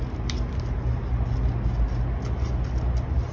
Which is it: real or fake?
real